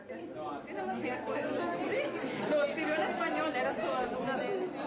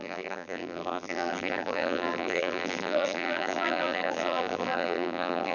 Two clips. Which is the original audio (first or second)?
first